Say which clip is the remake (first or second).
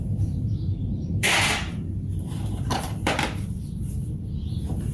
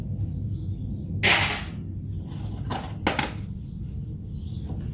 first